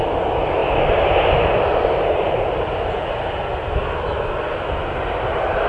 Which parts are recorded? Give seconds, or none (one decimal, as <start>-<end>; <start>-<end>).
0.0-0.6; 2.4-5.7